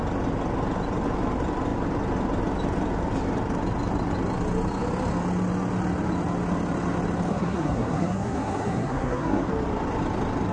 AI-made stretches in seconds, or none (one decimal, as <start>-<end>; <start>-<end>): 7.3-9.5